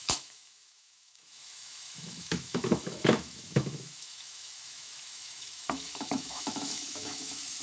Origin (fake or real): fake